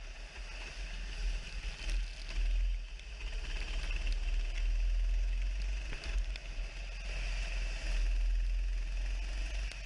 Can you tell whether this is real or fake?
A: real